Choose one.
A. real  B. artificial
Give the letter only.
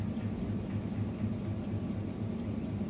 A